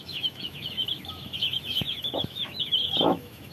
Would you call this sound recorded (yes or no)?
no